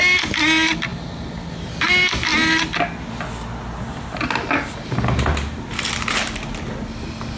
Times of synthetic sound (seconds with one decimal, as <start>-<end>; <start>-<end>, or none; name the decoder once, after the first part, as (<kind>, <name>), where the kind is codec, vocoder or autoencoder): none